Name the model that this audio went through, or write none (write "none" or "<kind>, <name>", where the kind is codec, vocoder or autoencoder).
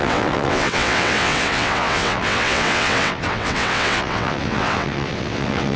vocoder, WaveNeXt